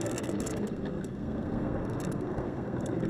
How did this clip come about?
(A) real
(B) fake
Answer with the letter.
B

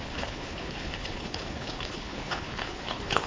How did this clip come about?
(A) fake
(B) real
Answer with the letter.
A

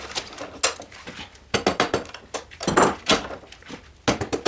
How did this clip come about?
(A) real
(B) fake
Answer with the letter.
A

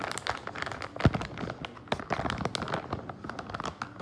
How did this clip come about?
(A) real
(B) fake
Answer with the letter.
A